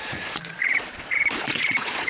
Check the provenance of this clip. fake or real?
fake